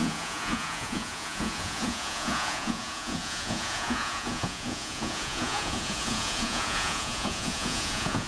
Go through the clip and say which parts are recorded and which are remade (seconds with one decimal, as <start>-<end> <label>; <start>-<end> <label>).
0.0-8.3 remade